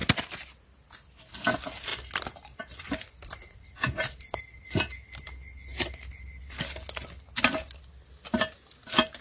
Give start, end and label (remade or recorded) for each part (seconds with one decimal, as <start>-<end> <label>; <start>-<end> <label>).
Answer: 0.0-1.3 remade; 1.3-1.9 recorded; 1.9-4.4 remade; 4.4-9.2 recorded